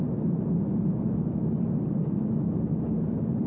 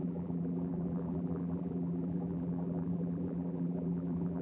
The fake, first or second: second